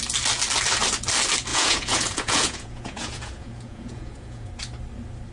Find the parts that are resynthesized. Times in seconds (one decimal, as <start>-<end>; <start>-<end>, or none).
1.5-4.5